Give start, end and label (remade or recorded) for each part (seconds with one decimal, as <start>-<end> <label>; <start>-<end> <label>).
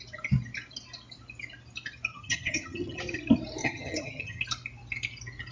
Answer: 0.0-2.1 recorded; 2.1-3.0 remade; 3.0-3.6 recorded; 3.6-4.4 remade; 4.4-5.5 recorded